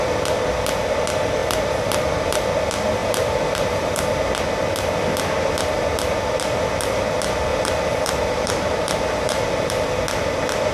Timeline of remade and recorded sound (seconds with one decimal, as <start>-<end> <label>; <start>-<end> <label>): 0.0-1.4 recorded; 1.4-2.5 remade; 2.5-3.0 recorded; 3.0-4.2 remade; 4.2-7.5 recorded; 7.5-9.7 remade; 9.7-10.7 recorded

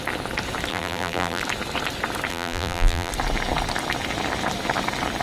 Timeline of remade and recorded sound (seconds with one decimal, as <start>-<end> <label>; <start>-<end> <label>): 0.0-0.7 recorded; 0.7-1.4 remade; 1.4-2.3 recorded; 2.3-3.1 remade; 3.1-5.2 recorded

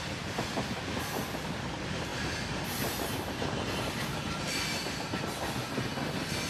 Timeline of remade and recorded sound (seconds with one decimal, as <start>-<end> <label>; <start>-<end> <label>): 0.0-6.5 recorded

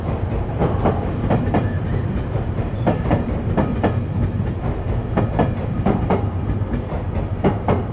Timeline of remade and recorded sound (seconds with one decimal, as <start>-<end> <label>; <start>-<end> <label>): 0.0-0.6 remade; 0.6-1.3 recorded; 1.3-3.7 remade; 3.7-5.2 recorded; 5.2-7.9 remade